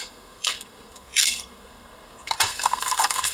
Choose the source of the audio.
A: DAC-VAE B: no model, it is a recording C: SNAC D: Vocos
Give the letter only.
C